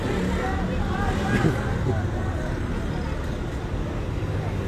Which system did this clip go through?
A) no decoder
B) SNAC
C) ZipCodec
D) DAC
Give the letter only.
A